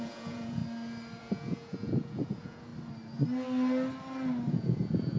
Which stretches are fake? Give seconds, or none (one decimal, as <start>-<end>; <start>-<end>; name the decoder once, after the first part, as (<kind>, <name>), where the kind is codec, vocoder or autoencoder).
0.0-0.6 (vocoder, Vocos); 1.2-2.7; 4.5-5.2